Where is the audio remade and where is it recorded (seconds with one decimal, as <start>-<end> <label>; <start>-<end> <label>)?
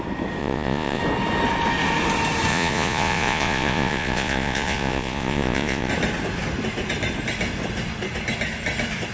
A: 0.0-0.4 recorded; 0.4-1.0 remade; 1.0-2.5 recorded; 2.5-5.9 remade; 5.9-9.1 recorded